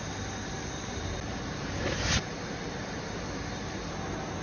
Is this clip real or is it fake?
real